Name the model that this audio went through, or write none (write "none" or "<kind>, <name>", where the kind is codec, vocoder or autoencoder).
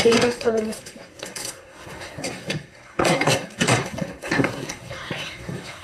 codec, SNAC